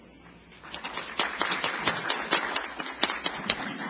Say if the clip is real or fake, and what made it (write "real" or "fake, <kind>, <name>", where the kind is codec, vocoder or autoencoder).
real